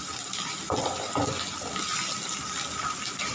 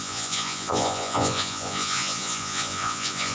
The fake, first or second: second